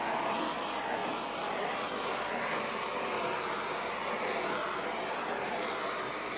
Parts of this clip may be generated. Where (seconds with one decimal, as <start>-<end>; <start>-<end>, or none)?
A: none